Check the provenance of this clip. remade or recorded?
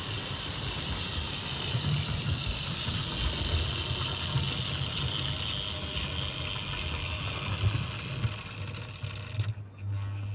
recorded